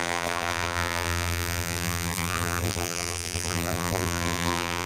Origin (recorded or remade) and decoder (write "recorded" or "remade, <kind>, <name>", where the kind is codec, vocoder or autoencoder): remade, vocoder, BigVGAN v2